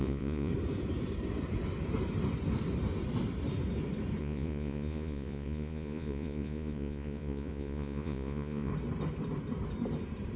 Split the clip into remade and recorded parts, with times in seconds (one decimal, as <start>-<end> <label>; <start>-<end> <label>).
0.0-0.5 remade; 0.5-4.2 recorded; 4.2-8.7 remade; 8.7-10.4 recorded